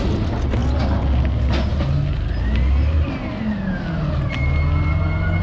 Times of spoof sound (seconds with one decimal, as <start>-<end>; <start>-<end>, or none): none